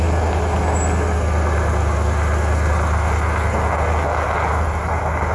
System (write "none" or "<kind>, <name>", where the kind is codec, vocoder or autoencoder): none